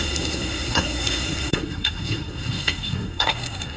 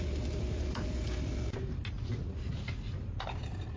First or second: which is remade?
first